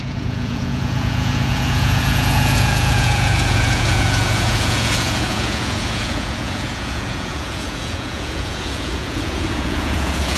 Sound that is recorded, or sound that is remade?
remade